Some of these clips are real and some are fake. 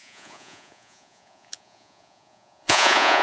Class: fake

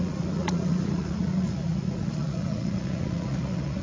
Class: fake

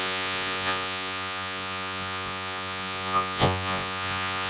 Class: fake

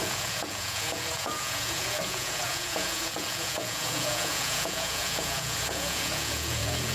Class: fake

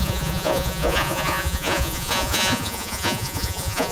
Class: fake